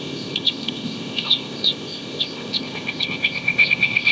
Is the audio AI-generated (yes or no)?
yes